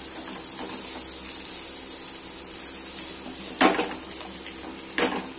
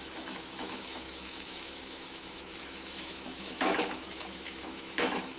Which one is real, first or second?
first